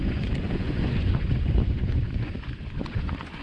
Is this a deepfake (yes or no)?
yes